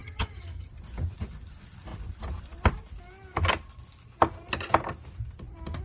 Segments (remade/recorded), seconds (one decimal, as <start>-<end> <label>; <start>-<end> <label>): 0.0-0.7 remade; 0.7-5.8 recorded